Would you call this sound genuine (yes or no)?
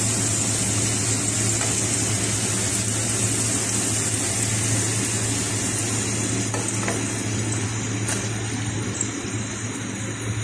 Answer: yes